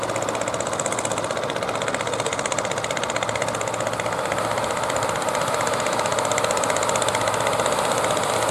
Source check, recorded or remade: recorded